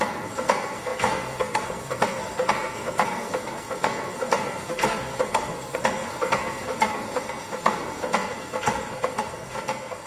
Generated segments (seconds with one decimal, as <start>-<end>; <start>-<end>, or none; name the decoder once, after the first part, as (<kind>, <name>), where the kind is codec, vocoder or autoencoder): 0.0-10.1 (codec, SNAC)